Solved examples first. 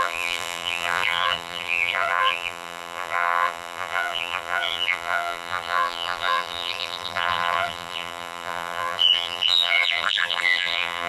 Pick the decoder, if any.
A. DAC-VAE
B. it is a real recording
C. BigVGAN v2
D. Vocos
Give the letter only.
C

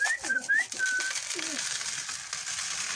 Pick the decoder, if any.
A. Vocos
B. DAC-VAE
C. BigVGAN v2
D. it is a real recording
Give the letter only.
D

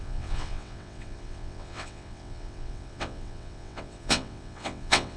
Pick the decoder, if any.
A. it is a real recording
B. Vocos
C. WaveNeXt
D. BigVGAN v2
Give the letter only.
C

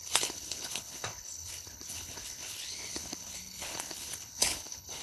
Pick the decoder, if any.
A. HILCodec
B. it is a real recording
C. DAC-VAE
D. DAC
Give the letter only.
A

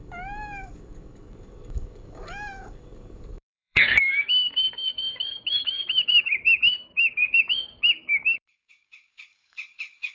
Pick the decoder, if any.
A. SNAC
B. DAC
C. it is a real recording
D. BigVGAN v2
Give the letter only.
B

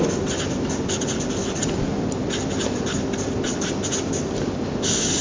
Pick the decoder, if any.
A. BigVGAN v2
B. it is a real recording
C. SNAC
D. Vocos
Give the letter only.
B